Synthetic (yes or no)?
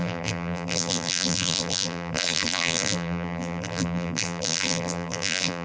yes